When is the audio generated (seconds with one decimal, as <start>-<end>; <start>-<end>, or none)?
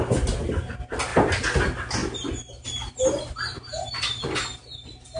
none